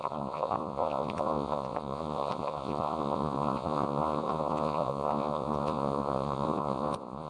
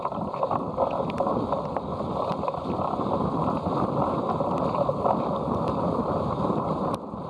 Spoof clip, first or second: first